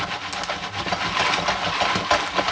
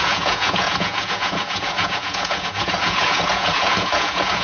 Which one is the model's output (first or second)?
second